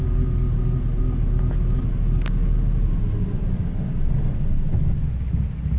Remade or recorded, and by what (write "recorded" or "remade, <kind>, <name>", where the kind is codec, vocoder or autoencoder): recorded